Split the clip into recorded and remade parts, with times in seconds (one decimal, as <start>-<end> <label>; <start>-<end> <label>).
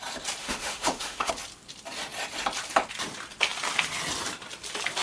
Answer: 0.0-0.4 recorded; 0.4-1.3 remade; 1.3-5.0 recorded